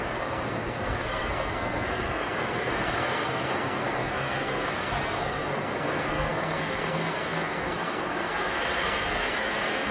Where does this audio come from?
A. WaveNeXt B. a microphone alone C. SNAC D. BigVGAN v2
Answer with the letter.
C